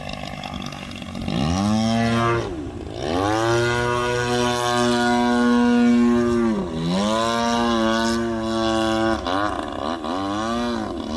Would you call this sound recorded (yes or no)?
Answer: yes